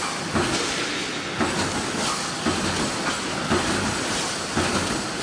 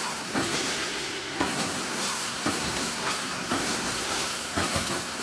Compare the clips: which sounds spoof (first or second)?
second